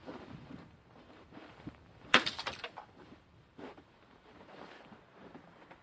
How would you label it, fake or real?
fake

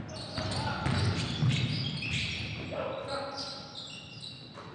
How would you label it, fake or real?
real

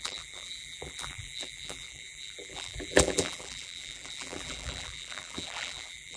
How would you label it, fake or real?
fake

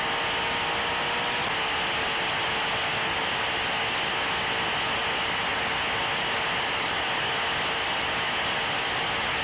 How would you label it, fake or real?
real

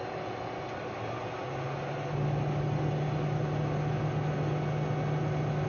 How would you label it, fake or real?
real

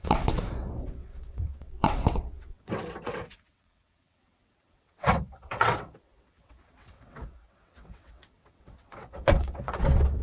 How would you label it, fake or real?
fake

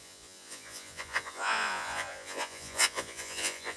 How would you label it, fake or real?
fake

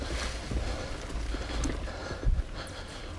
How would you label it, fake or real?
real